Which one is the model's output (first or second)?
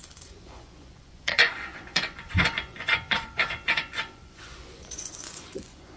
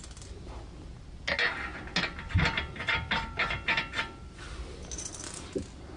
first